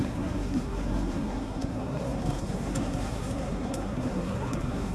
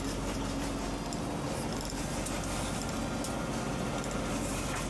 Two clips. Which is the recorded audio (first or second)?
second